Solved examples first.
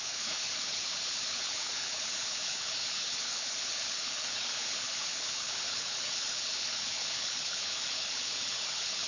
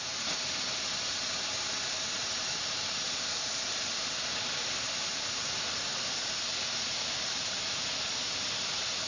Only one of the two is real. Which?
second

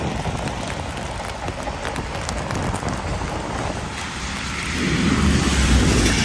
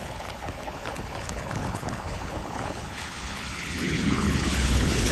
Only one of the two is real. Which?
first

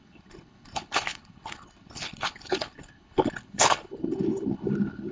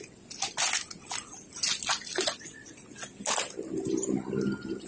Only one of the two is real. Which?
second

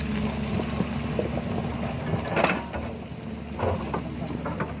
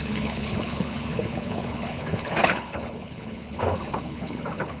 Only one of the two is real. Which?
first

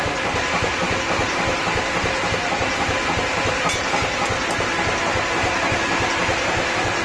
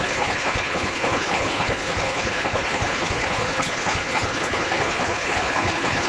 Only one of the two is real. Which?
first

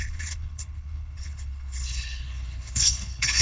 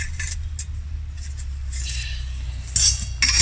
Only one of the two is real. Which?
second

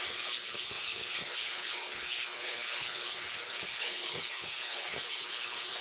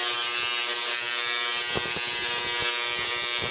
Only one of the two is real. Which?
second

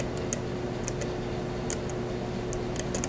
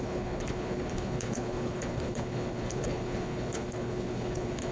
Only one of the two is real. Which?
first